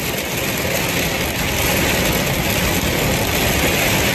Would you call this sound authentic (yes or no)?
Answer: yes